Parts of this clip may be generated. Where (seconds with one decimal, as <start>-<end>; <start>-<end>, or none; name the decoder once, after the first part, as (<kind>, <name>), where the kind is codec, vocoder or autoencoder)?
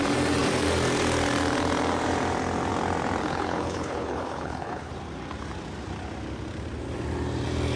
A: 3.2-4.9 (codec, HILCodec)